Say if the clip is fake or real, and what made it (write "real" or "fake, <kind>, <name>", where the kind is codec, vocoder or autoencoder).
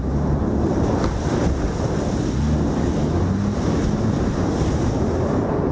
real